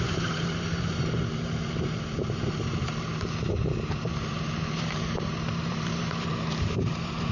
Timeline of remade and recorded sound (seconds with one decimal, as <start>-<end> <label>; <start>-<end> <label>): 0.0-7.3 remade